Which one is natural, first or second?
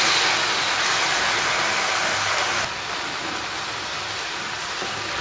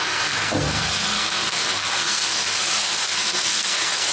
first